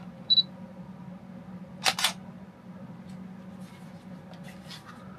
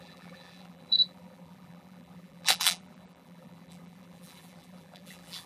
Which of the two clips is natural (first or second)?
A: first